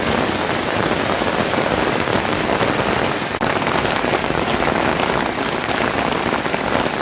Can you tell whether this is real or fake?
real